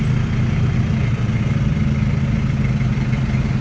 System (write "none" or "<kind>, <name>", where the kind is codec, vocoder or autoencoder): none